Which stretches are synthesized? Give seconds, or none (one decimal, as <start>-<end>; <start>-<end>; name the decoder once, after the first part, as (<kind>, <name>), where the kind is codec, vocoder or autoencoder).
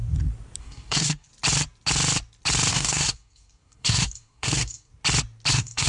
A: 0.6-1.3 (codec, SNAC); 2.7-4.9; 5.5-5.9